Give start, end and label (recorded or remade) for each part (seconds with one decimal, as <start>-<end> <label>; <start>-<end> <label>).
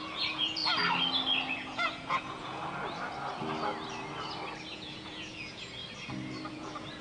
0.0-0.6 remade; 0.6-1.5 recorded; 1.5-2.6 remade; 2.6-4.7 recorded; 4.7-5.8 remade; 5.8-6.5 recorded; 6.5-7.0 remade